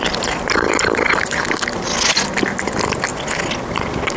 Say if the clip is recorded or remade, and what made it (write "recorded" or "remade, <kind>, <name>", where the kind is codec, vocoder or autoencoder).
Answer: recorded